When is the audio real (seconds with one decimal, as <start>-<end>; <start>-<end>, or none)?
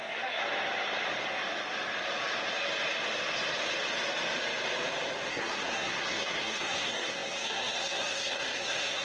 0.4-5.3